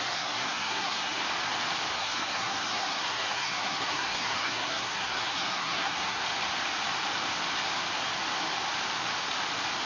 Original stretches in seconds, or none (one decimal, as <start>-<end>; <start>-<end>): 1.2-1.9; 6.2-9.9